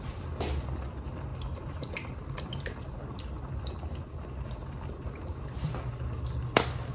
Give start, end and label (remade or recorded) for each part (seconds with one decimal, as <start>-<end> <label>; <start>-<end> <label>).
0.0-1.3 recorded; 1.3-1.9 remade; 1.9-6.9 recorded